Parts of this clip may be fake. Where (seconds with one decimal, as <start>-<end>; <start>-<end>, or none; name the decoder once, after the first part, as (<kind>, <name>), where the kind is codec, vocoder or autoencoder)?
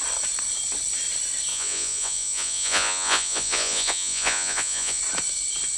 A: 1.5-5.0 (vocoder, Vocos)